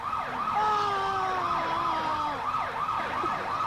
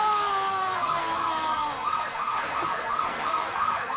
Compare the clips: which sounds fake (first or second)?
second